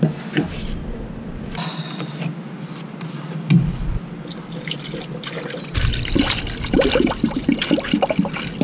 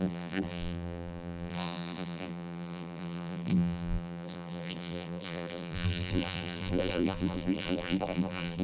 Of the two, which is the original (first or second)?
first